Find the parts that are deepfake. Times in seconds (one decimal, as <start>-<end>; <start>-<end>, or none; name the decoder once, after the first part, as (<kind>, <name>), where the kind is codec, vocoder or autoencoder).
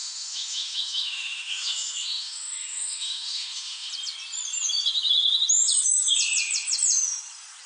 0.0-3.9 (autoencoder, DAC-VAE)